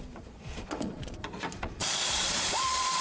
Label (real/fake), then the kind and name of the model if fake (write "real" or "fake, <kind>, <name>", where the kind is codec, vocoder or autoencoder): fake, vocoder, Vocos